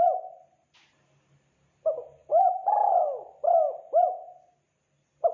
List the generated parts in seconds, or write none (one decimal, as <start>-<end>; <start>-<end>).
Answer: none